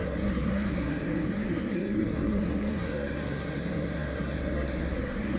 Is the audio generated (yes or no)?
yes